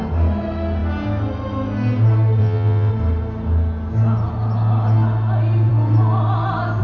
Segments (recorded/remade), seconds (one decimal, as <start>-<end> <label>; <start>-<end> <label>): 0.0-2.4 recorded; 2.4-2.9 remade; 2.9-6.8 recorded